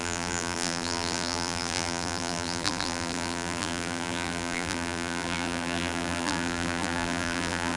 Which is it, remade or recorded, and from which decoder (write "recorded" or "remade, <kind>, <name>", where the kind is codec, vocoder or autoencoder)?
remade, vocoder, BigVGAN v2